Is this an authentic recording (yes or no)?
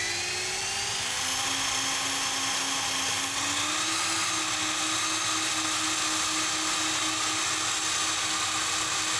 yes